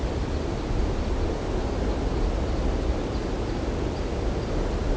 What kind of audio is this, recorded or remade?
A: recorded